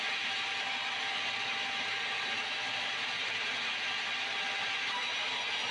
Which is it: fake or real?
real